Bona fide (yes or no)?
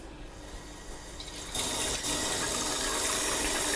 yes